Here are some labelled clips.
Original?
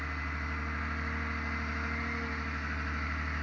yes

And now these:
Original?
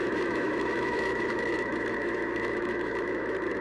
no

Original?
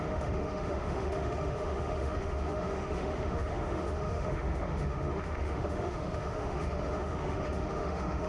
no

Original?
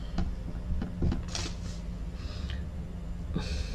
yes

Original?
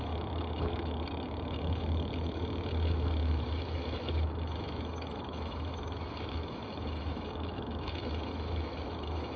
no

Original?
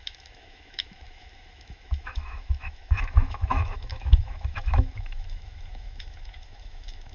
no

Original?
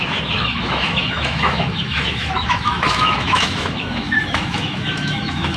no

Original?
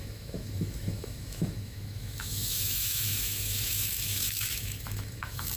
no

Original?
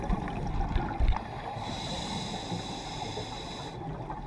yes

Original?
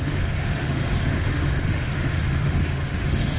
no